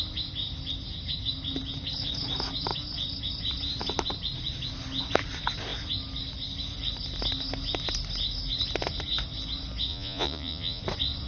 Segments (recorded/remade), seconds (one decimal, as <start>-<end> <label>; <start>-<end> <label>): 0.0-9.9 recorded; 9.9-10.8 remade; 10.8-11.3 recorded